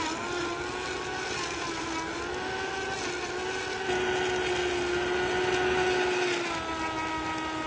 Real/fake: real